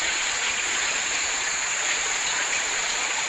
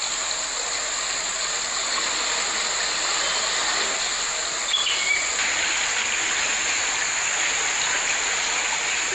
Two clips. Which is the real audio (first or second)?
second